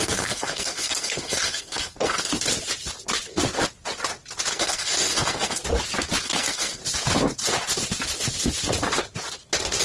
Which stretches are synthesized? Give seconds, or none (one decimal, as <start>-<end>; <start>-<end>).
0.0-2.3; 4.5-5.6; 6.2-6.8